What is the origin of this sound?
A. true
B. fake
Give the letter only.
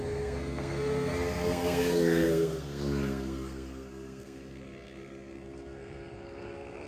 B